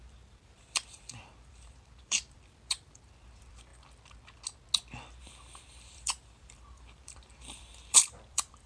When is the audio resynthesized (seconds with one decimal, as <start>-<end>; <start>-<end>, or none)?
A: 0.0-3.7; 5.2-8.7